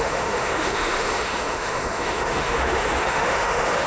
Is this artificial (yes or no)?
yes